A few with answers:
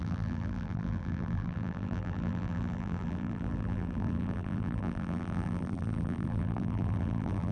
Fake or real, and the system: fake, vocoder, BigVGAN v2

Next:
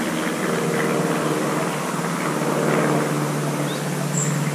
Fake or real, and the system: real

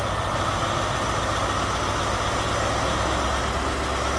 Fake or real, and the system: real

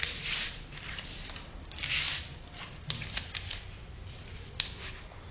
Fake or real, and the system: real